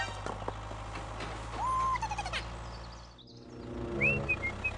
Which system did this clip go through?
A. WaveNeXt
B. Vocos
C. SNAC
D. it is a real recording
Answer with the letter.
D